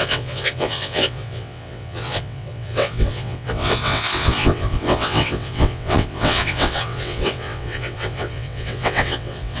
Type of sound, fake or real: fake